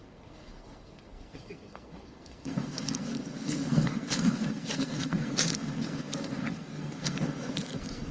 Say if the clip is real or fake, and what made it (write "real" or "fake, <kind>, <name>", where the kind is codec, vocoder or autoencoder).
fake, codec, SNAC